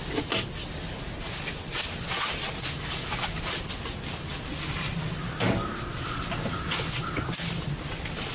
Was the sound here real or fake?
real